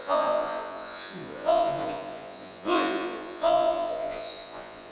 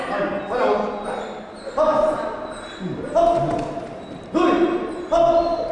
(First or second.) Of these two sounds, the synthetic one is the first